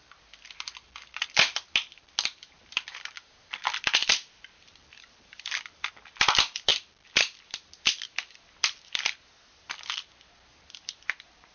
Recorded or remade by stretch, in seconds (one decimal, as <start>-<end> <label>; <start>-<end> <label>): 0.0-4.0 recorded; 4.0-5.9 remade; 5.9-11.5 recorded